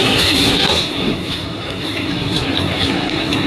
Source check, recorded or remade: remade